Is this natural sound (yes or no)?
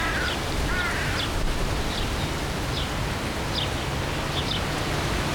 yes